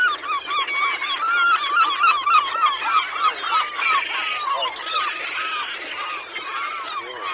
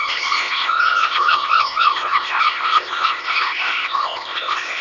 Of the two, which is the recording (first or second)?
first